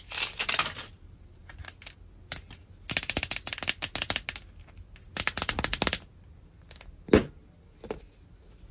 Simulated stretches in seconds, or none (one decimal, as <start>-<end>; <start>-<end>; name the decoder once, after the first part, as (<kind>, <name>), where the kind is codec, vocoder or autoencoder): none